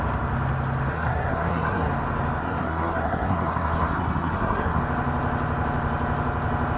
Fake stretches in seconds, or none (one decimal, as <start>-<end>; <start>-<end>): 0.9-1.9; 2.4-4.8